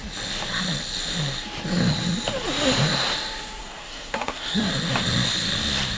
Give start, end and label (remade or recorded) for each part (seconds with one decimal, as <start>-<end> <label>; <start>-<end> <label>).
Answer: 0.0-3.6 recorded; 3.6-4.7 remade; 4.7-6.0 recorded